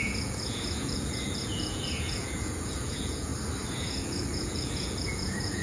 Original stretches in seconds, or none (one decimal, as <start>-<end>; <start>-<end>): 3.3-3.8

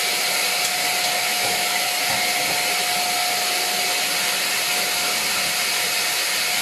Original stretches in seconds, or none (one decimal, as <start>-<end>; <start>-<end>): 0.0-1.3; 2.0-6.6

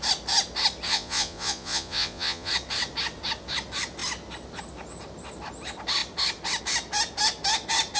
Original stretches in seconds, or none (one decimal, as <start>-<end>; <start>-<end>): 0.0-0.9; 2.5-8.0

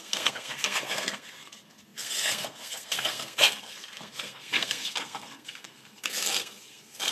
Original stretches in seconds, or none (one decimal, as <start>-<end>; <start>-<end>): none

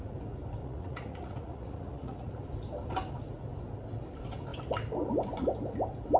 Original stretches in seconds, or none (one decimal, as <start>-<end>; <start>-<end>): 0.0-0.6; 2.4-6.2

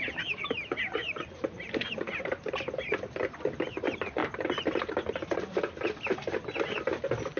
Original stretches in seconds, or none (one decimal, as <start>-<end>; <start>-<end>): 0.0-1.0; 2.5-4.2; 4.9-7.4

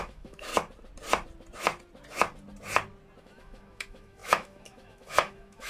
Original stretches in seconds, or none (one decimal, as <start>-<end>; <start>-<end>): 0.5-3.2